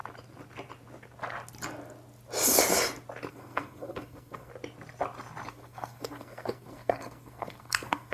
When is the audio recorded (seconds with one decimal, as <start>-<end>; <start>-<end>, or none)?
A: 0.0-3.3; 4.5-5.5